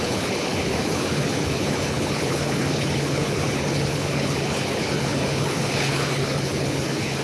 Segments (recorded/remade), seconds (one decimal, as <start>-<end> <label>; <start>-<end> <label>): 0.0-7.2 remade